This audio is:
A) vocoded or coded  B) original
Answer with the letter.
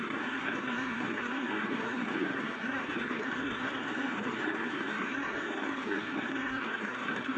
A